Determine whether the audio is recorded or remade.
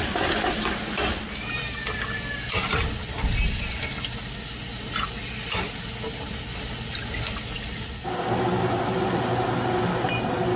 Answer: recorded